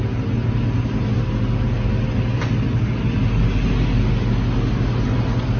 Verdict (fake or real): real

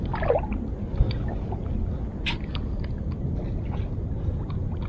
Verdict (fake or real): real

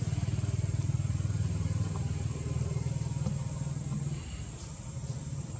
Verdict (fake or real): real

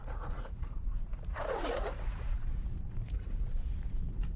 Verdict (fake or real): fake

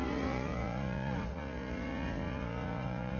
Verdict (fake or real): fake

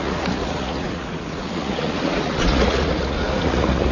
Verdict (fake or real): fake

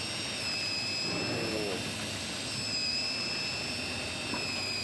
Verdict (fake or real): real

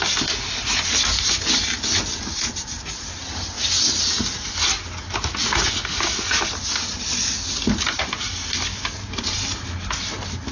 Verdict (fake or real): real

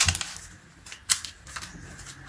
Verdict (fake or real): real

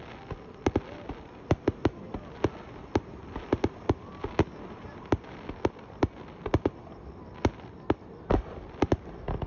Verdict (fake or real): real